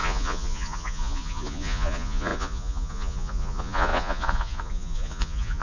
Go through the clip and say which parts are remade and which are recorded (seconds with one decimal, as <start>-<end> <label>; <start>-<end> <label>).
0.0-5.6 remade